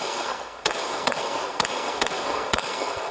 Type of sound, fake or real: fake